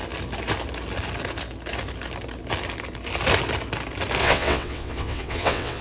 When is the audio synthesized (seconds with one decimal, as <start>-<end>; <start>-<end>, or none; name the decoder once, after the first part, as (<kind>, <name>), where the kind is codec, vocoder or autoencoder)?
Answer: 4.2-5.8 (vocoder, WaveNeXt)